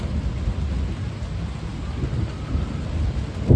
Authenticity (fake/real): real